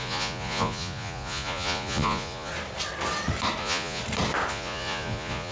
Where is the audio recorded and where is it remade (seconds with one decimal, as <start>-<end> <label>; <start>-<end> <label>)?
0.0-2.5 remade; 2.5-3.6 recorded; 3.6-4.0 remade; 4.0-4.5 recorded; 4.5-5.5 remade